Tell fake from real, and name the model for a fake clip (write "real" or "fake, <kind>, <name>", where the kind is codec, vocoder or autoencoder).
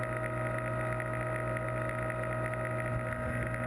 real